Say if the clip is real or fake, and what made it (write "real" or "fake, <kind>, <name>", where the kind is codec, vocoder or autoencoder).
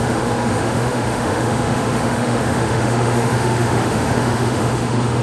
fake, autoencoder, DAC-VAE